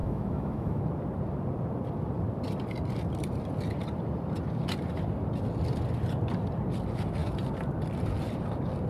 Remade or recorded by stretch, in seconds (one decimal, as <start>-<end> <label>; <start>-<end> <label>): 0.0-0.8 remade; 0.8-8.9 recorded